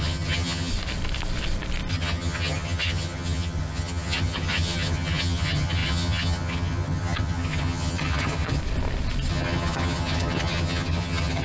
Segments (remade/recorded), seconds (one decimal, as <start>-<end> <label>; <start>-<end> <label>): 0.0-0.7 remade; 0.7-1.9 recorded; 1.9-8.6 remade; 8.6-9.3 recorded; 9.3-11.4 remade

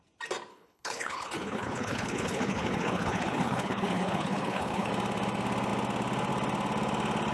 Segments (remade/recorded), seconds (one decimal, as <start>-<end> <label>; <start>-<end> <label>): 0.0-0.5 recorded; 0.5-4.9 remade; 4.9-7.3 recorded

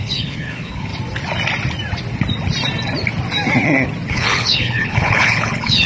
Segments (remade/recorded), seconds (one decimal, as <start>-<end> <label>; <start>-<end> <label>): 0.0-0.9 remade; 0.9-4.1 recorded; 4.1-5.9 remade

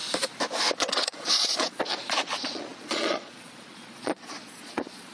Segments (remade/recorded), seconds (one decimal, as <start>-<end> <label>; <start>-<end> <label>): 0.0-0.8 recorded; 0.8-5.1 remade

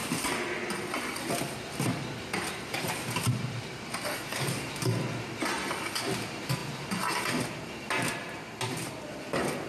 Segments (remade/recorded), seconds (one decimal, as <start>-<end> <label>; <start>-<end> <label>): 0.0-9.7 recorded

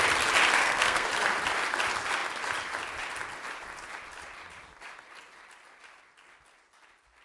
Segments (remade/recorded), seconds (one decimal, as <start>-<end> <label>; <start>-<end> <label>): 0.0-0.6 recorded; 0.6-1.1 remade; 1.1-7.2 recorded

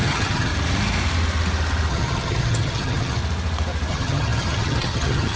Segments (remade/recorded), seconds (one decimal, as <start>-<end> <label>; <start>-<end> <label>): 0.0-0.5 remade; 0.5-1.9 recorded; 1.9-3.2 remade; 3.2-3.9 recorded; 3.9-5.4 remade